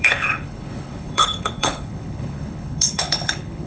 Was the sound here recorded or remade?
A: remade